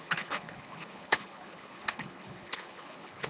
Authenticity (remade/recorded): remade